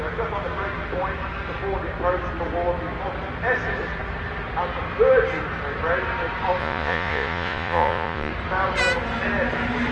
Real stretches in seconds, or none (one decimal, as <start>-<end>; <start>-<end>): 0.0-6.6; 8.3-9.9